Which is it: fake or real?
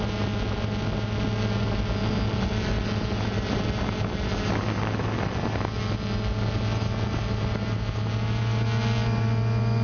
real